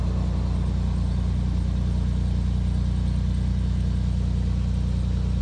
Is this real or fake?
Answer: real